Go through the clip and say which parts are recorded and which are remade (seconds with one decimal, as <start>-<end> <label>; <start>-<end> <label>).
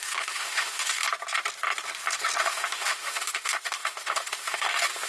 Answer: 0.0-1.0 remade; 1.0-2.4 recorded; 2.4-5.1 remade